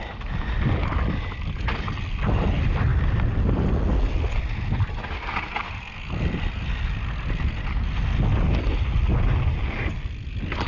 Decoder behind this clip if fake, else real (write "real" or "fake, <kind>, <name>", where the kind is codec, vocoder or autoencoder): real